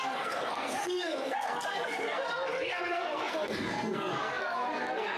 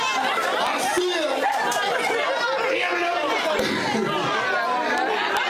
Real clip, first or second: second